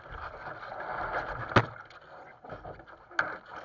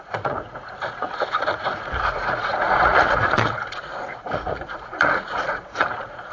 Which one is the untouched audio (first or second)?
first